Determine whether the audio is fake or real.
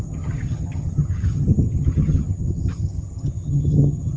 fake